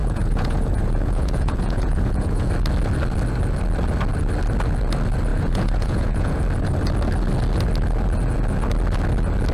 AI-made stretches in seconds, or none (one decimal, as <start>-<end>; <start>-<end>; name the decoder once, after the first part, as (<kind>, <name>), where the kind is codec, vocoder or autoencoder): 0.0-2.5 (vocoder, Vocos); 5.3-6.4